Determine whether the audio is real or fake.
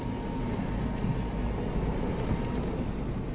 real